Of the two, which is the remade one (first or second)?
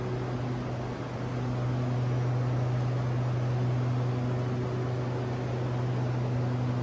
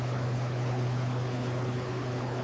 second